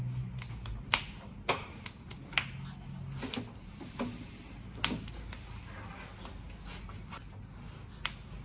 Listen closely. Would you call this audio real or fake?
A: real